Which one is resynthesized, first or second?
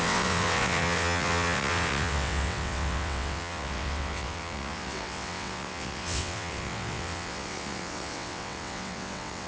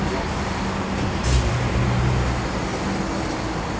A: first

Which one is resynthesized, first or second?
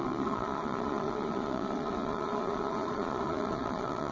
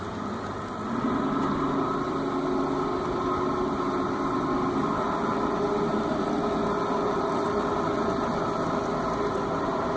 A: first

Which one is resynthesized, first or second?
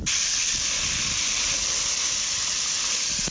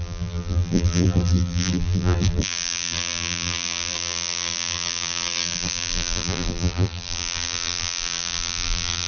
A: second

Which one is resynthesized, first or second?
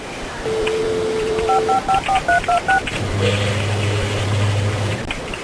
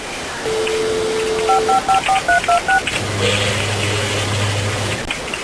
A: first